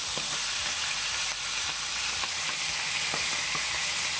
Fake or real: real